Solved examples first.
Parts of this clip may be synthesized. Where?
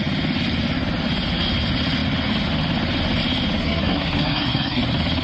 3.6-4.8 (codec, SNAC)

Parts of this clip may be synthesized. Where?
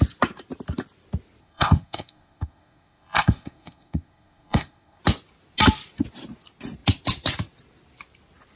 1.4-5.0 (codec, SNAC)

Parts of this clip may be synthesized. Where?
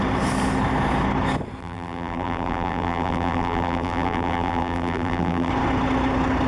1.6-5.5 (vocoder, BigVGAN v2)